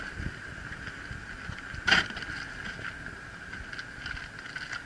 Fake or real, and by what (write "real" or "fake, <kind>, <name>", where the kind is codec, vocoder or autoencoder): real